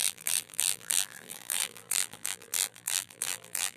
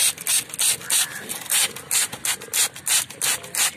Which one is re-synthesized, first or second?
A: first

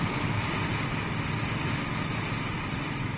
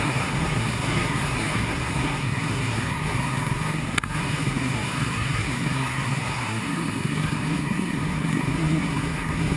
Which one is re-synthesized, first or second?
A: second